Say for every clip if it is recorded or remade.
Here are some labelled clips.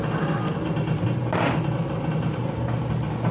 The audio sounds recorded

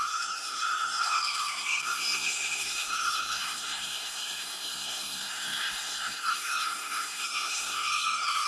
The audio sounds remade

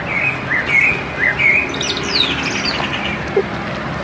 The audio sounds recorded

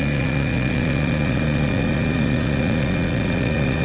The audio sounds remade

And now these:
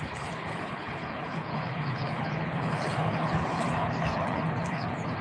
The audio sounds remade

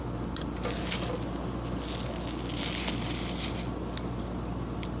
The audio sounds recorded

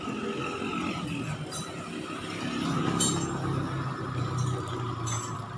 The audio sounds recorded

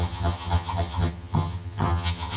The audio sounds remade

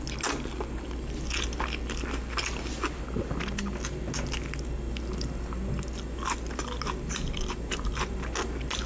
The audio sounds recorded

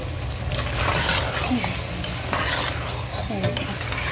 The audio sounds recorded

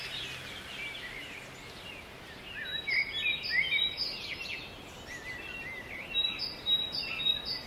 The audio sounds recorded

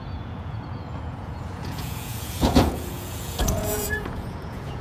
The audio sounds remade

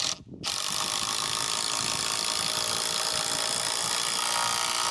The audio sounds recorded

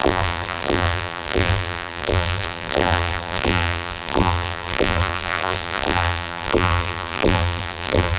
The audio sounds remade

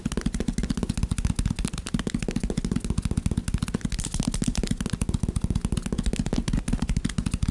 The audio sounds recorded